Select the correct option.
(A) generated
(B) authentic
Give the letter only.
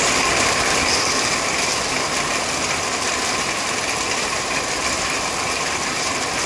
B